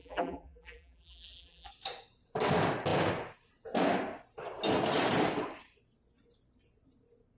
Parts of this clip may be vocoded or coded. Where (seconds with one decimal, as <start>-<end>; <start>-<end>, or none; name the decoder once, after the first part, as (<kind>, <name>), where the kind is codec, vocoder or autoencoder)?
0.0-1.7 (vocoder, BigVGAN v2)